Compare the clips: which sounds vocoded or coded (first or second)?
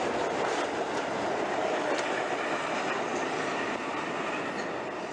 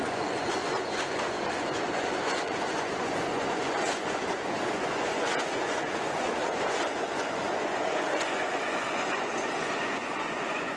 second